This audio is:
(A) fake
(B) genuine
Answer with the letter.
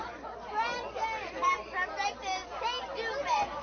B